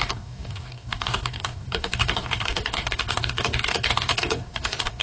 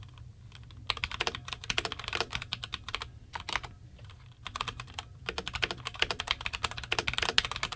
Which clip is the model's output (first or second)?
first